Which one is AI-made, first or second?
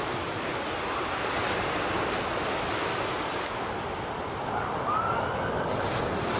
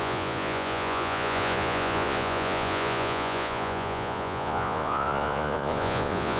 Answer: second